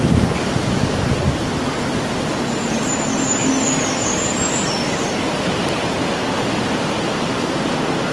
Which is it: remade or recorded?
recorded